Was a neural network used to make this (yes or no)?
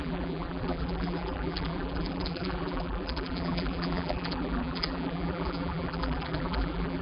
yes